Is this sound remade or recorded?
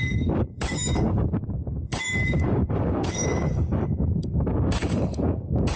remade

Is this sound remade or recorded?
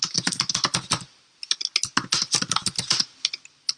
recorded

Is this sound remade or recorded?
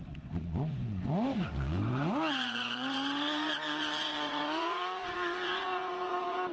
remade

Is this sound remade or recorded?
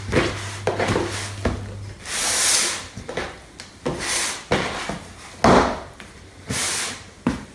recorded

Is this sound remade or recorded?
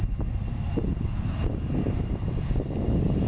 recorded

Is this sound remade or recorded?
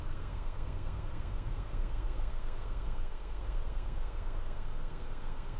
remade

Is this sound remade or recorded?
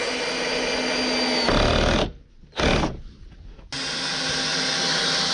recorded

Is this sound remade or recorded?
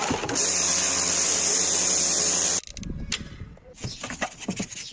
recorded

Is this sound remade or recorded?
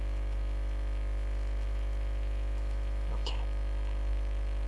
remade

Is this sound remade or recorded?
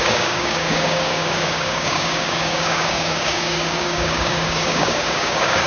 remade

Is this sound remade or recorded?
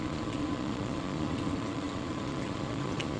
remade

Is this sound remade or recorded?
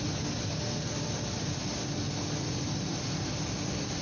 recorded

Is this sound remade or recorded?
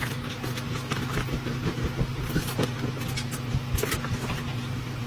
recorded